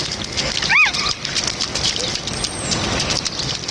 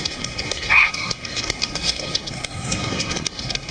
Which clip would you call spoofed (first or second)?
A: second